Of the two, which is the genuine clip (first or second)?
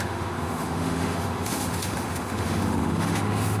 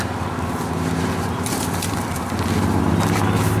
second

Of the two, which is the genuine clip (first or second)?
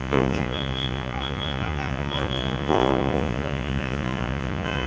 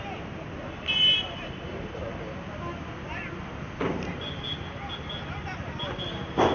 second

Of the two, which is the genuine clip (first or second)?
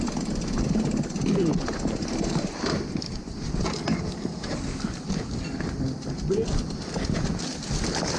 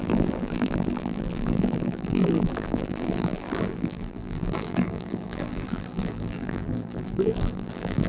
first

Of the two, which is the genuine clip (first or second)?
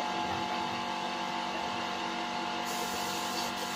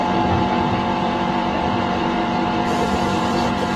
first